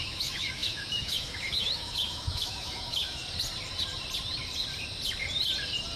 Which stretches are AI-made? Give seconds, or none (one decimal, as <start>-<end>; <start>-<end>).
0.0-3.2